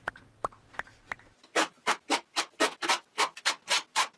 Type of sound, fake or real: real